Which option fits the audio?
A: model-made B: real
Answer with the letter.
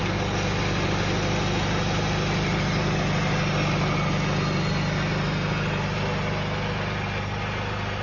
B